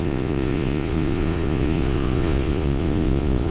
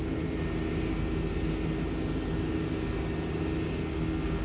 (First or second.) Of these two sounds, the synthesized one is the first